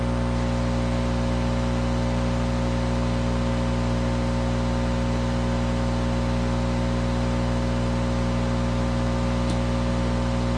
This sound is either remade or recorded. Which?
recorded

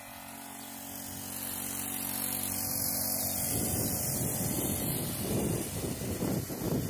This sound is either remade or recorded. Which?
recorded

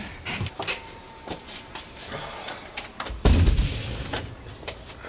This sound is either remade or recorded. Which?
remade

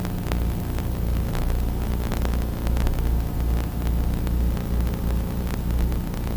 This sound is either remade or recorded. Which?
recorded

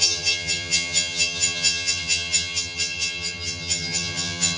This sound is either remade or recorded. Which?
remade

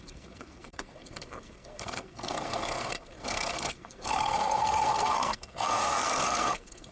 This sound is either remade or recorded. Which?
remade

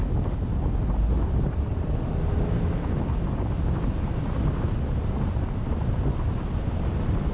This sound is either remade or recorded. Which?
recorded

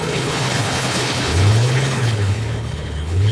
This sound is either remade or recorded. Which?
remade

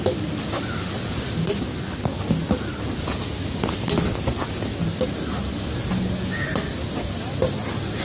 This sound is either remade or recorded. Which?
recorded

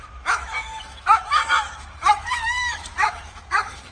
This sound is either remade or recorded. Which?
remade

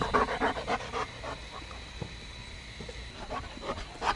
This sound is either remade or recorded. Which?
recorded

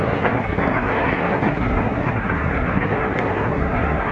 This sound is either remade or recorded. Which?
remade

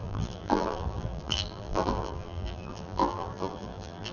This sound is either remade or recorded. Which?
remade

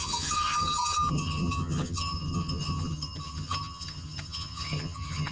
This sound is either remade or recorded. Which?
remade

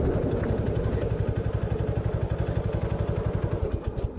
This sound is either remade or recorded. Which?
recorded